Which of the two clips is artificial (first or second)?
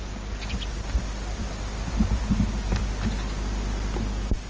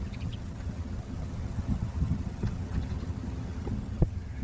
second